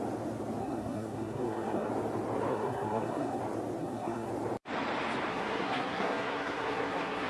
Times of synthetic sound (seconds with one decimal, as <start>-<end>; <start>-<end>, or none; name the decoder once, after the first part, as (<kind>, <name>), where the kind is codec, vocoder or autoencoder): 0.6-1.9 (codec, SNAC); 2.5-3.4; 3.8-4.3; 5.3-7.3